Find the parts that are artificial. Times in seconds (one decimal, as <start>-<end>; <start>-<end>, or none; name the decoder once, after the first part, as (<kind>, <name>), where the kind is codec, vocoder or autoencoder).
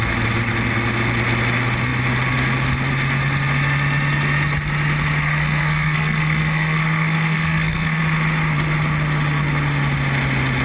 5.2-8.0 (codec, SNAC)